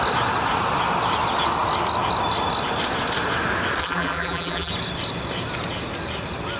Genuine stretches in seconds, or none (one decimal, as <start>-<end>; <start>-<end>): 0.0-3.8; 4.7-6.6